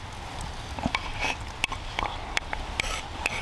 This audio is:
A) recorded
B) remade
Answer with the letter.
A